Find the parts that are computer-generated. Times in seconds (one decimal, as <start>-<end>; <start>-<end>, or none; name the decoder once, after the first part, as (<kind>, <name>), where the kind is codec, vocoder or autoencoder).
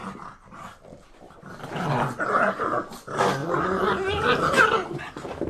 3.4-4.6 (vocoder, BigVGAN v2)